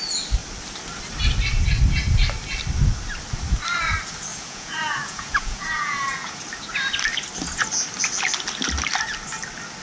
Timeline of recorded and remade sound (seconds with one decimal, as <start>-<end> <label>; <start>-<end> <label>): 0.0-4.3 recorded; 4.3-6.4 remade; 6.4-9.8 recorded